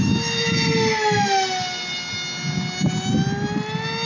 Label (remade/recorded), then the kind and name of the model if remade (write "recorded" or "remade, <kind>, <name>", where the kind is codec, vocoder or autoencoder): recorded